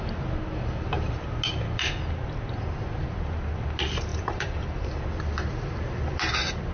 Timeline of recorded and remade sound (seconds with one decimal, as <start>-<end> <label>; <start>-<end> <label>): 0.0-4.1 recorded; 4.1-5.0 remade; 5.0-6.7 recorded